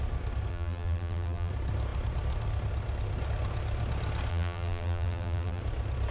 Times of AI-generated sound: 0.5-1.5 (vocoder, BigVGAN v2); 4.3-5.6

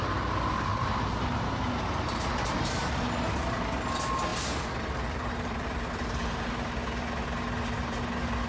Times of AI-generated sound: 0.7-1.7 (vocoder, BigVGAN v2); 4.3-6.7

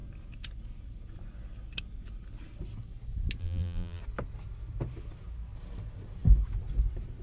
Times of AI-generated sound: 3.4-4.0 (vocoder, BigVGAN v2)

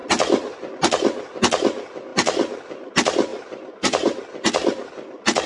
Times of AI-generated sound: 3.3-4.2 (vocoder, BigVGAN v2)

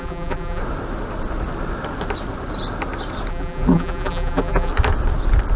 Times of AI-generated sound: 0.0-0.6 (vocoder, BigVGAN v2); 3.3-4.7

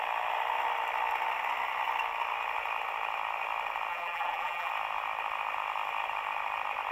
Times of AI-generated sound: 3.9-4.7 (vocoder, BigVGAN v2)

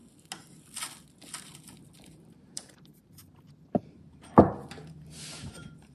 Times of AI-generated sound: 2.0-3.2 (vocoder, BigVGAN v2); 4.1-5.9